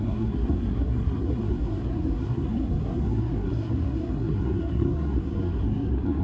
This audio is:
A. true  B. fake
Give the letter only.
B